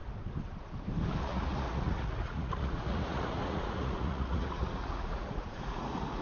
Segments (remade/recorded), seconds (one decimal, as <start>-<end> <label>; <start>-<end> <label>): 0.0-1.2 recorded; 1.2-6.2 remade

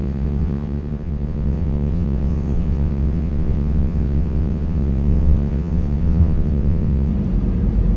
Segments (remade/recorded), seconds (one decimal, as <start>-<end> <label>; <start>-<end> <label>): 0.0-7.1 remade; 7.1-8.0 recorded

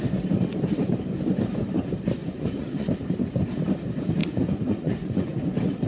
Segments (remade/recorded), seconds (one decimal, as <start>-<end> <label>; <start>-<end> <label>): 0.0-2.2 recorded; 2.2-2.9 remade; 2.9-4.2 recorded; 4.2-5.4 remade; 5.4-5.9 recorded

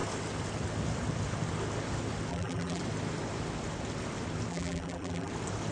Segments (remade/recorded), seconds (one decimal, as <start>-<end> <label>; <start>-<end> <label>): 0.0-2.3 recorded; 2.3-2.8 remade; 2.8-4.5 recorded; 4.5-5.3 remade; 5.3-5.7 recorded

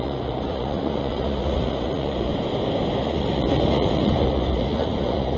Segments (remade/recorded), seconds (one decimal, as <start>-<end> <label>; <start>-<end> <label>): 0.0-2.3 remade; 2.3-3.0 recorded; 3.0-5.4 remade

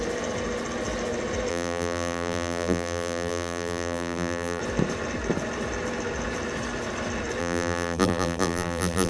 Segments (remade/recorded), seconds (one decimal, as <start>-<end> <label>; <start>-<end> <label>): 0.0-1.5 recorded; 1.5-4.6 remade; 4.6-7.4 recorded; 7.4-9.1 remade

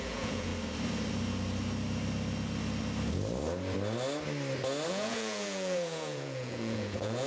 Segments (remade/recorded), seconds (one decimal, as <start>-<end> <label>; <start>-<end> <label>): 0.0-0.5 remade; 0.5-4.9 recorded; 4.9-7.3 remade

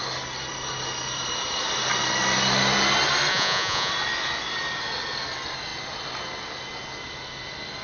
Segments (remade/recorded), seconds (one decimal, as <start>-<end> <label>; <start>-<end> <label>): 0.0-3.3 recorded; 3.3-3.9 remade; 3.9-7.8 recorded